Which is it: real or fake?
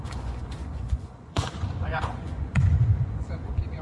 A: fake